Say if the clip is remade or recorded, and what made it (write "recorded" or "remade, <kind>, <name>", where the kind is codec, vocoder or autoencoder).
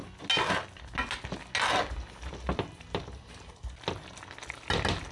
recorded